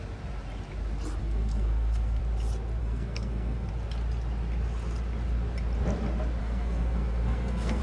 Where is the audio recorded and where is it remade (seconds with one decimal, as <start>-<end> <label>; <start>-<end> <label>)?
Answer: 0.0-1.2 recorded; 1.2-2.2 remade; 2.2-2.8 recorded; 2.8-3.7 remade; 3.7-6.4 recorded; 6.4-7.8 remade